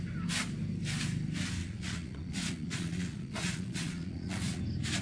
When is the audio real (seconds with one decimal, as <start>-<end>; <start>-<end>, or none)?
0.0-1.6; 4.6-5.0